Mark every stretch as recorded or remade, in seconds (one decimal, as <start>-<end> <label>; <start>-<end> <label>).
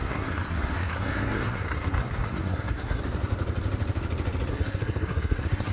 0.0-3.0 remade; 3.0-4.5 recorded; 4.5-5.7 remade